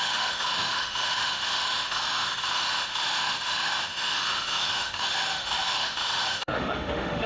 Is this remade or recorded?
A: remade